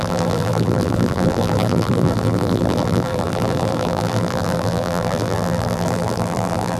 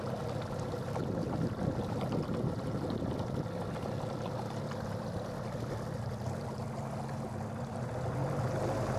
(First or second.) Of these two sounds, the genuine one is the second